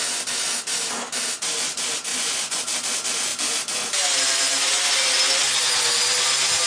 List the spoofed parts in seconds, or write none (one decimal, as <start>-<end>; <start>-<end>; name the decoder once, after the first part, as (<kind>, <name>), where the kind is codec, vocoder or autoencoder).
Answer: 2.1-2.6 (vocoder, Vocos)